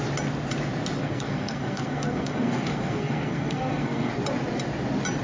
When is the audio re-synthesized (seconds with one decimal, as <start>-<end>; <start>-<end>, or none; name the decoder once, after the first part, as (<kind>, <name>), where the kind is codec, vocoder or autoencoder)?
1.0-4.1 (codec, SNAC)